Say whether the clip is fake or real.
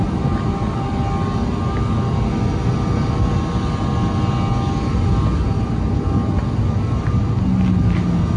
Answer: real